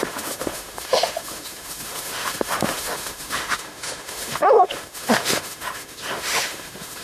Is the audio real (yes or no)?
no